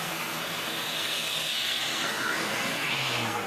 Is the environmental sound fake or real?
fake